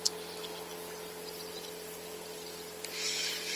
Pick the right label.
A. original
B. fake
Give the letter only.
A